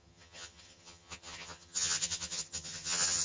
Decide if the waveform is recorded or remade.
remade